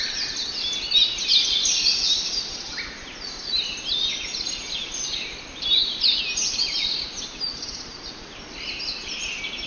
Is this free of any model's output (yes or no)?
yes